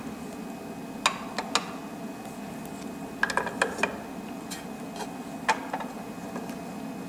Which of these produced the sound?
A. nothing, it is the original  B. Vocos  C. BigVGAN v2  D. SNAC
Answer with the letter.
A